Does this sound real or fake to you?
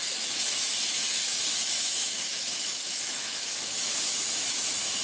fake